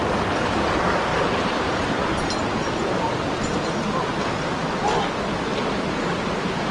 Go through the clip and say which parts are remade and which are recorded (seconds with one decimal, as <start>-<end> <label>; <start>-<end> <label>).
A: 0.0-6.7 recorded